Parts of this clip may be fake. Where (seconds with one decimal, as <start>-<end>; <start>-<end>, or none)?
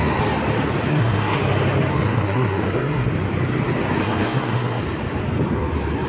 0.9-1.4; 1.9-3.1; 4.0-4.8